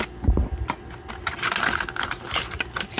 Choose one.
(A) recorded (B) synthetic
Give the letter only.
A